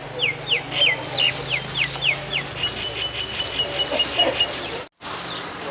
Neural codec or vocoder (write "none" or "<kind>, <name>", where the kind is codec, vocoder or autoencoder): none